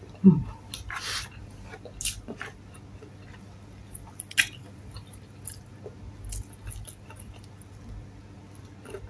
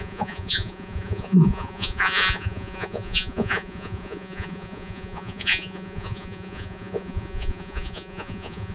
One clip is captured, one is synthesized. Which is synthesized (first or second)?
second